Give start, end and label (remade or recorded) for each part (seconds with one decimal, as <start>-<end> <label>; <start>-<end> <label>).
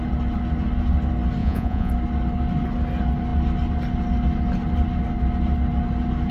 0.0-1.4 recorded; 1.4-1.9 remade; 1.9-6.3 recorded